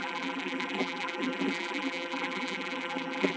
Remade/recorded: remade